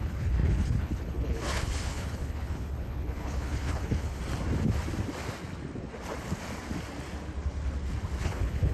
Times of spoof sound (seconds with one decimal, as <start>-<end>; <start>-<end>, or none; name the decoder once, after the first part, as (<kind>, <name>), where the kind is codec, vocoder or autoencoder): 0.0-4.2 (codec, HILCodec); 8.2-8.7